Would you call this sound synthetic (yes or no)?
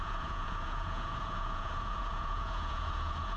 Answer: yes